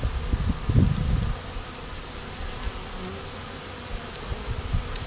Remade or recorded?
recorded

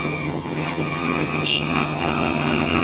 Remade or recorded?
remade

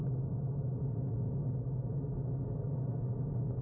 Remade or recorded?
recorded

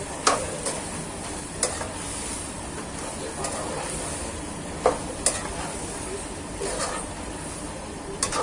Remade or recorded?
recorded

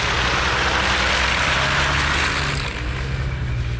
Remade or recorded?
recorded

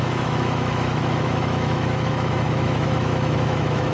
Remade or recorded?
remade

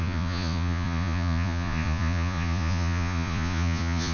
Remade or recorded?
remade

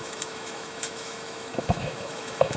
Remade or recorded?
remade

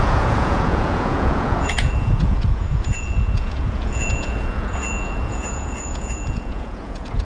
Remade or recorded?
remade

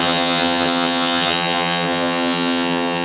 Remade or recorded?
remade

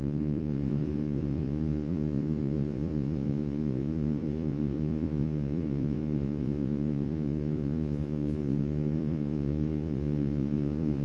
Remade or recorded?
remade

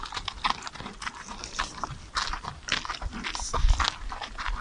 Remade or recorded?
recorded